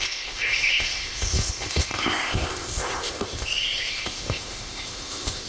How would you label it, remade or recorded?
remade